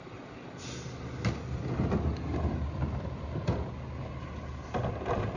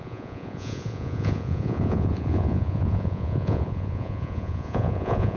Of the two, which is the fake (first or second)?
second